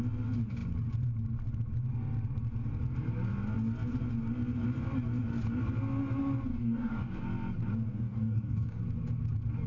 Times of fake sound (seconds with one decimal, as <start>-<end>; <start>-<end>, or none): 6.5-7.2; 7.9-8.8